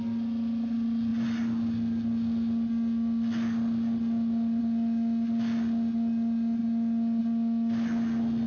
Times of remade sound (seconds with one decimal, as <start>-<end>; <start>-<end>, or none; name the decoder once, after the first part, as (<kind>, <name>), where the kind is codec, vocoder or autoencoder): none

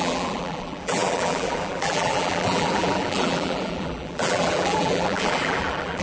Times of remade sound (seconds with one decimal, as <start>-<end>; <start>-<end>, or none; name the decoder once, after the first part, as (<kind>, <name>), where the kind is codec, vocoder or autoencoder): 0.0-6.0 (vocoder, BigVGAN v2)